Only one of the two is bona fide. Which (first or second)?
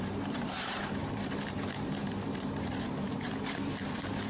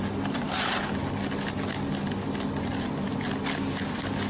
second